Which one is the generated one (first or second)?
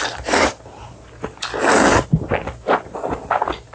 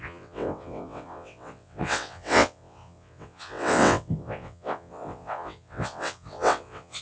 second